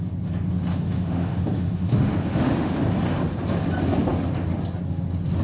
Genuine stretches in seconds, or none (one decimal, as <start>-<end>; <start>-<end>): 0.0-0.7; 2.7-5.4